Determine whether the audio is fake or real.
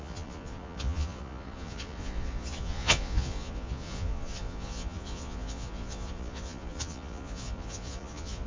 fake